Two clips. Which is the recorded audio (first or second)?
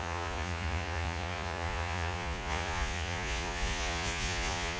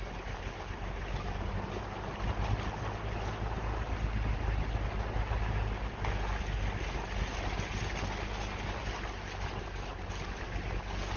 second